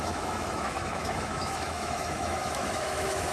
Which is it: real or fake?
fake